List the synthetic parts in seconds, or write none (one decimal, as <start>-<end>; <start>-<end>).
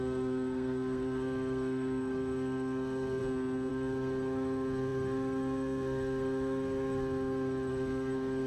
0.0-3.2; 3.7-8.5